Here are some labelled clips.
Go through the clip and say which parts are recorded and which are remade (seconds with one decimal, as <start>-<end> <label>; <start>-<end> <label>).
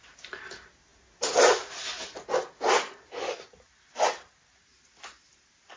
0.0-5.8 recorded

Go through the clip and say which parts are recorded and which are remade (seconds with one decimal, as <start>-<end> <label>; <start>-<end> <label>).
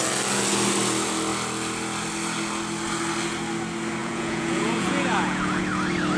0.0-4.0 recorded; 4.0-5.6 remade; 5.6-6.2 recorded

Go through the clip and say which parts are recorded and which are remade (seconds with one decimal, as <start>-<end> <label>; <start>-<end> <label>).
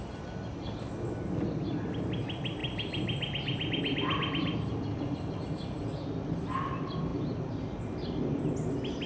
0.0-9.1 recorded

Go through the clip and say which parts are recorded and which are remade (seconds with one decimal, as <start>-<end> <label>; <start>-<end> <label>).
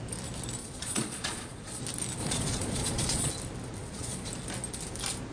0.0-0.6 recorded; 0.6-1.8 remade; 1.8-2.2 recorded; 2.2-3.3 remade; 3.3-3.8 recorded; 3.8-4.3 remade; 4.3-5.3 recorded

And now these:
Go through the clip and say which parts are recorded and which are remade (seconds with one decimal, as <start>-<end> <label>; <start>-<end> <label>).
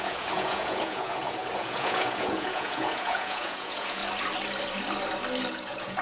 0.0-4.0 remade; 4.0-5.5 recorded; 5.5-6.0 remade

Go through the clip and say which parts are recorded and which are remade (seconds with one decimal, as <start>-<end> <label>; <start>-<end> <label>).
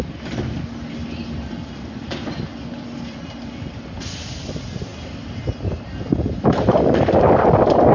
0.0-7.9 recorded